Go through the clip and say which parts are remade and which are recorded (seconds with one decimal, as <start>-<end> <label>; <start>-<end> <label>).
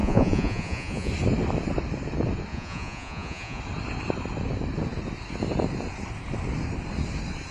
0.0-1.1 remade; 1.1-2.5 recorded; 2.5-3.6 remade; 3.6-7.5 recorded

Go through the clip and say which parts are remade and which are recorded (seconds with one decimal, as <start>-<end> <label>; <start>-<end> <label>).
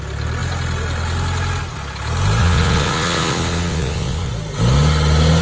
0.0-2.4 recorded; 2.4-4.3 remade; 4.3-5.4 recorded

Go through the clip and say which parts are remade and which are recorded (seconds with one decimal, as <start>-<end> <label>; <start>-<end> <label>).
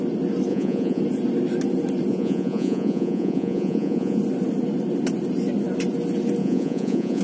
0.0-0.5 recorded; 0.5-1.0 remade; 1.0-2.1 recorded; 2.1-4.2 remade; 4.2-6.4 recorded; 6.4-7.2 remade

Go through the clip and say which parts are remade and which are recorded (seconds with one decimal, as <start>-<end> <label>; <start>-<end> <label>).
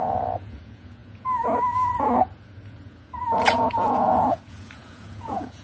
0.0-5.6 remade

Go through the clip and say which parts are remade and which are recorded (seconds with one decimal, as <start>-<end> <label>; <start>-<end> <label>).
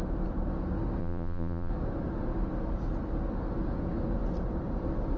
0.0-1.0 recorded; 1.0-1.7 remade; 1.7-5.2 recorded